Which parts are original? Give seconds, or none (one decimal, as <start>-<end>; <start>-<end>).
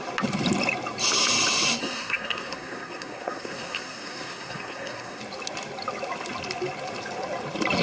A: 0.0-1.8; 5.2-7.8